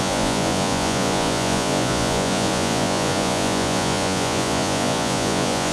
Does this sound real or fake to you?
fake